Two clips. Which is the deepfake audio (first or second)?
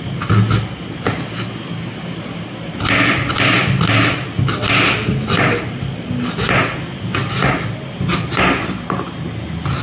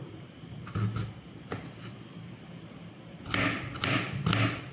second